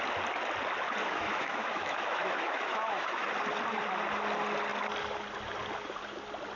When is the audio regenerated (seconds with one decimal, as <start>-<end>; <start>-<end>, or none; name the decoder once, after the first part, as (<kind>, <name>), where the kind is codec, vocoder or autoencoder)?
1.0-3.3 (autoencoder, DAC-VAE)